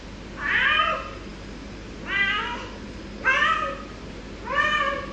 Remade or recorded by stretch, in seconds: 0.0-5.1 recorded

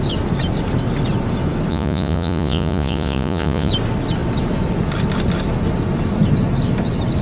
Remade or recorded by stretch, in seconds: 0.0-1.7 recorded; 1.7-3.7 remade; 3.7-7.2 recorded